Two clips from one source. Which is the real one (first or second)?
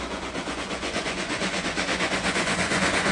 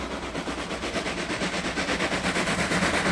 second